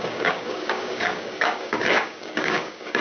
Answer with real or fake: fake